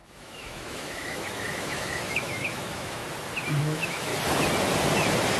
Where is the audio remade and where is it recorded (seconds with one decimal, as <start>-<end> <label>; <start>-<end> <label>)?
0.0-3.0 remade; 3.0-3.6 recorded; 3.6-4.1 remade; 4.1-5.4 recorded